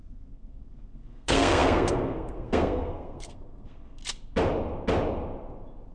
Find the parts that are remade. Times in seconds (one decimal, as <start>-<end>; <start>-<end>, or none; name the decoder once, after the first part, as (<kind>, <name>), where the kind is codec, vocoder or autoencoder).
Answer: 0.0-4.0 (codec, SNAC)